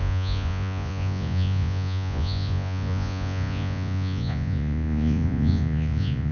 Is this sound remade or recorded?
remade